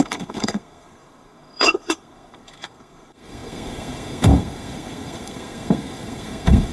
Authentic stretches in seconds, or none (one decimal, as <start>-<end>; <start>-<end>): none